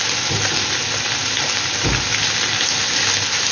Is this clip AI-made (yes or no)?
no